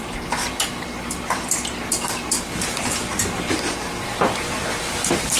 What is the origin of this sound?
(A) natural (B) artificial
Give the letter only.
B